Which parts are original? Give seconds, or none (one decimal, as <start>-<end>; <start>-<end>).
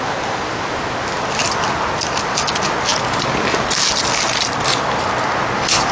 0.0-5.9